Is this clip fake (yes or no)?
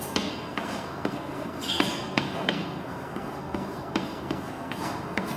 yes